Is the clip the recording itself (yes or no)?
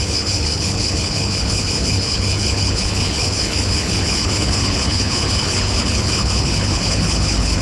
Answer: no